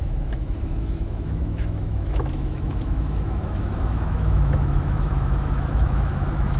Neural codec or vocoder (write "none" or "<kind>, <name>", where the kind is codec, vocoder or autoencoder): autoencoder, DAC-VAE